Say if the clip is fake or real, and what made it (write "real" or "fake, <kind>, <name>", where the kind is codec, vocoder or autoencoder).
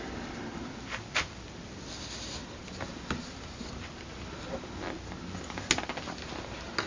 real